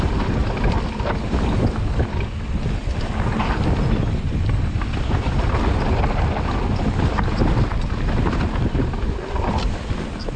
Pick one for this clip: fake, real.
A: real